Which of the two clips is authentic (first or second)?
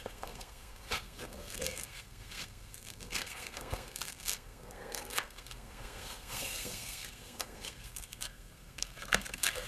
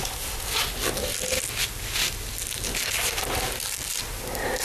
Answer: second